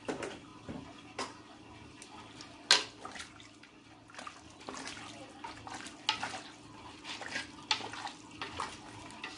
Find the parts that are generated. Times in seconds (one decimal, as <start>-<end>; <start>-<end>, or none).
none